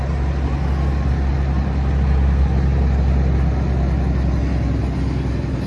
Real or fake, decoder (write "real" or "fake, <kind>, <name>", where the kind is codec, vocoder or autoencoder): real